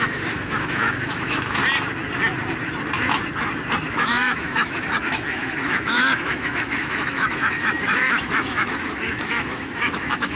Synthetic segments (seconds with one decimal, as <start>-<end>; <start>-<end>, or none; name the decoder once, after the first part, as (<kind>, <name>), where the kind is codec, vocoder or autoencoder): 0.0-1.6 (autoencoder, DAC-VAE); 3.9-10.4